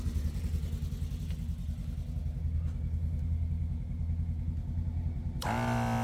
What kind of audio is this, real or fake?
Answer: real